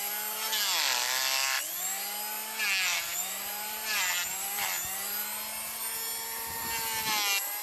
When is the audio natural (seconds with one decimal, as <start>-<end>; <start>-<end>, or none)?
0.0-2.9; 4.0-7.6